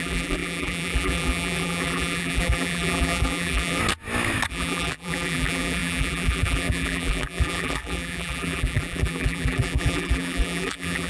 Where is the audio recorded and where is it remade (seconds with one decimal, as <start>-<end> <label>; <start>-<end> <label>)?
0.0-3.8 remade; 3.8-4.5 recorded; 4.5-11.1 remade